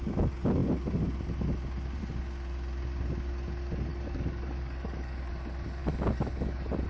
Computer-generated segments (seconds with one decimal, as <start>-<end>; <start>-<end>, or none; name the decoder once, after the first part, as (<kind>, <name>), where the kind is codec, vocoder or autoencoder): 3.9-5.3 (codec, DAC); 5.8-6.9